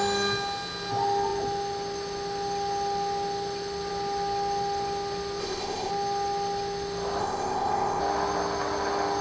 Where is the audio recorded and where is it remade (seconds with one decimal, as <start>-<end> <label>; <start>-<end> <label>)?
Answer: 0.0-5.4 recorded; 5.4-5.9 remade; 5.9-7.2 recorded; 7.2-8.0 remade; 8.0-9.2 recorded